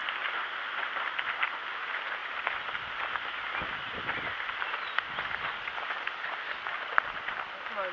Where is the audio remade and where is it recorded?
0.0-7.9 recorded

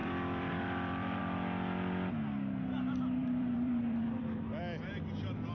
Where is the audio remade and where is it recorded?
0.0-1.2 remade; 1.2-3.2 recorded; 3.2-4.6 remade; 4.6-5.5 recorded

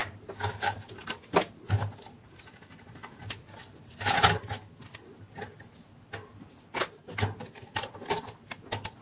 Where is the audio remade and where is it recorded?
0.0-9.0 recorded

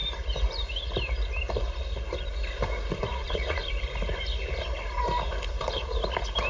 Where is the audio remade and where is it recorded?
0.0-3.0 recorded; 3.0-3.6 remade; 3.6-6.5 recorded

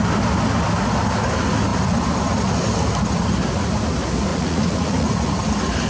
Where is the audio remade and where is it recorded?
0.0-4.3 recorded; 4.3-5.3 remade; 5.3-5.9 recorded